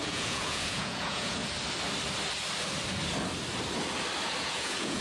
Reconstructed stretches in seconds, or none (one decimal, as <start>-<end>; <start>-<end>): 0.0-1.4; 4.4-5.0